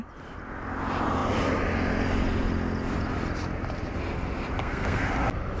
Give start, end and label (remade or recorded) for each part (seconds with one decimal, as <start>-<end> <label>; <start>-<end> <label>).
0.0-4.6 recorded; 4.6-5.1 remade; 5.1-5.6 recorded